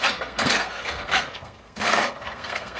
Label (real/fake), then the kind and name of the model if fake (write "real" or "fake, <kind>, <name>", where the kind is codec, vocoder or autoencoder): fake, codec, SNAC